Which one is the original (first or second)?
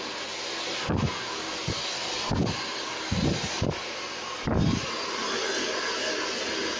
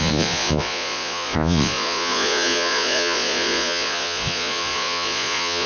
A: first